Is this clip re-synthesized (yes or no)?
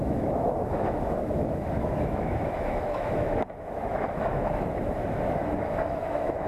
yes